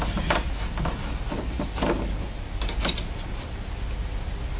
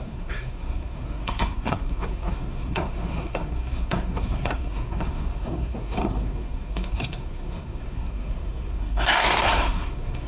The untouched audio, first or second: first